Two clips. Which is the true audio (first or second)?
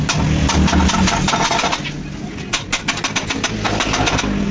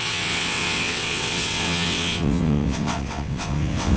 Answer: first